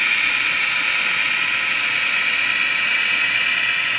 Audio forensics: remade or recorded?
recorded